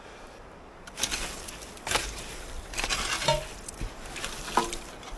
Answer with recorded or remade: recorded